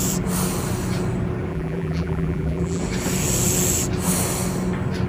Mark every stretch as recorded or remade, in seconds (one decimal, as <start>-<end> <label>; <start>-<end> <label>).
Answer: 0.0-1.5 recorded; 1.5-2.8 remade; 2.8-5.1 recorded